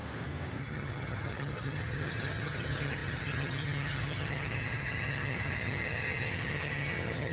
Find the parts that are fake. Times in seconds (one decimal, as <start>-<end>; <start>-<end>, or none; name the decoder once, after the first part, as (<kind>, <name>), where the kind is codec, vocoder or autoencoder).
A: 0.6-7.3 (vocoder, HiFi-GAN)